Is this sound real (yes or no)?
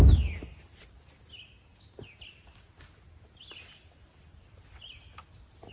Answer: yes